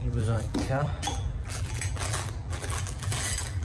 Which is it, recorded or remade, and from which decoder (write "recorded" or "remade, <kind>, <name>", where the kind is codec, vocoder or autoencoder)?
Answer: remade, vocoder, BigVGAN v2